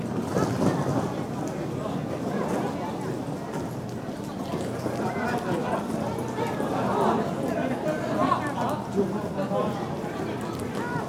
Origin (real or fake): real